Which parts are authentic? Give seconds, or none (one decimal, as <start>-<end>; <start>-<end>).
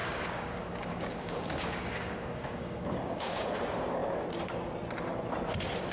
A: 3.5-5.9